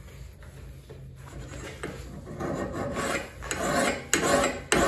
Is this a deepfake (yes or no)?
no